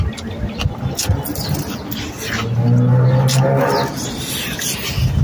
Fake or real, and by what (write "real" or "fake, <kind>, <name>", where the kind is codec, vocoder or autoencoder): real